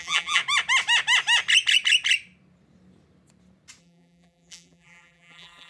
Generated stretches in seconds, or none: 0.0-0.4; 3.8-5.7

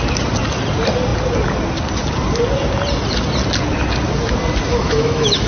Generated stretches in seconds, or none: 4.7-5.5